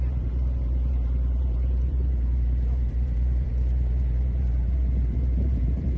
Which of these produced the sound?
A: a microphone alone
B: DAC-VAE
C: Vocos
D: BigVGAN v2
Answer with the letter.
D